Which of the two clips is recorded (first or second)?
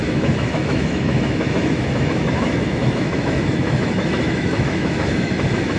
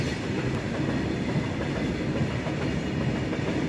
second